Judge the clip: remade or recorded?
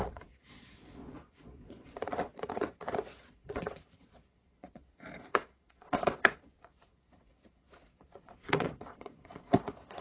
remade